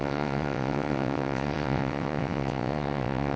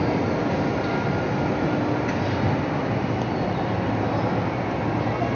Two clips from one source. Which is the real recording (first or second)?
second